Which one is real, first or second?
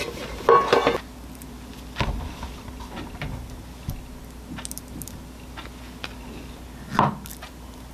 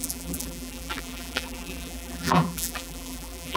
first